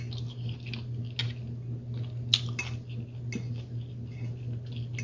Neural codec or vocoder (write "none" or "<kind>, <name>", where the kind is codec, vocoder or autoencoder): none